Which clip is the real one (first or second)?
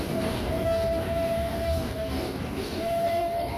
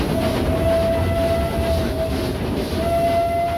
second